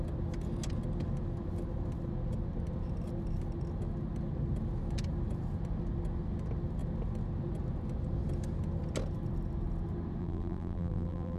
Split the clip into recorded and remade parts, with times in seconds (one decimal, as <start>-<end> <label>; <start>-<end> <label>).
0.0-10.2 recorded; 10.2-11.4 remade